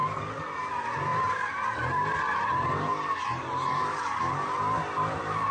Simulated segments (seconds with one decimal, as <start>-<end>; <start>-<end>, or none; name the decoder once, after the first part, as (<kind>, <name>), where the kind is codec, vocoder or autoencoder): none